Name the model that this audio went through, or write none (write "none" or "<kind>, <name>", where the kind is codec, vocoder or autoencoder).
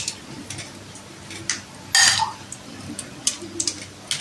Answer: none